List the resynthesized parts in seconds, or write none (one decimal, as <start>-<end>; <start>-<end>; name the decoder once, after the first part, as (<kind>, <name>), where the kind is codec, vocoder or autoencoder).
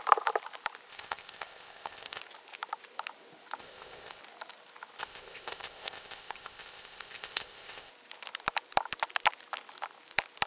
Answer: 0.9-2.2 (codec, ZipCodec); 3.6-4.2; 5.0-7.9